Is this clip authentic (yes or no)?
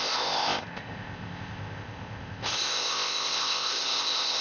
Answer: no